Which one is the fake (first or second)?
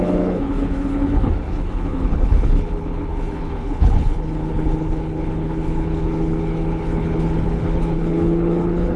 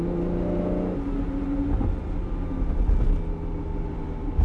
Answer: first